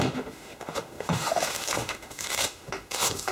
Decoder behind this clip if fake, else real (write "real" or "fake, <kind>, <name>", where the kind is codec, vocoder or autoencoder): fake, autoencoder, DAC-VAE